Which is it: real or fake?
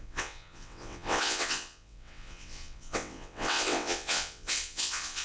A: fake